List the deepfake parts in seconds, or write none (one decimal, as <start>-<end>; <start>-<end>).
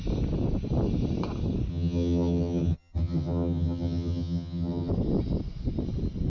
1.7-4.9